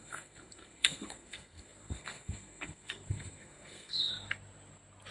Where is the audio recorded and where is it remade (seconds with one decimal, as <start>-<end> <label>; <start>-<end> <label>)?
0.0-4.1 remade; 4.1-5.1 recorded